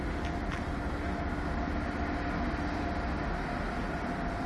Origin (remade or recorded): recorded